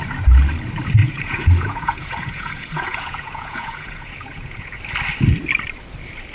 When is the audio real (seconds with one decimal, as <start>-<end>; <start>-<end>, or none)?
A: 0.0-1.0; 4.8-6.3